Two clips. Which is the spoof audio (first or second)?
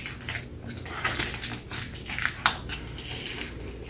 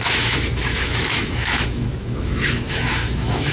second